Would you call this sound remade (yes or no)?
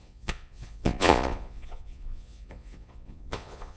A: yes